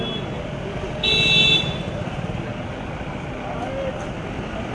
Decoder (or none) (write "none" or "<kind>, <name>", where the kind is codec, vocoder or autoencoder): none